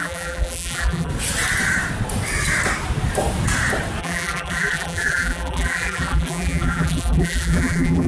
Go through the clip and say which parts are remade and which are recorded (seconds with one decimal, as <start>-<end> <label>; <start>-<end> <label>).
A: 0.0-1.1 remade; 1.1-4.0 recorded; 4.0-8.1 remade